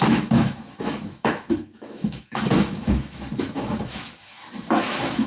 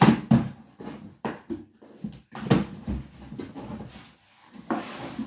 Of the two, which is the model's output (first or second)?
first